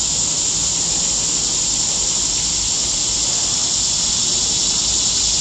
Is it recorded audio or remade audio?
recorded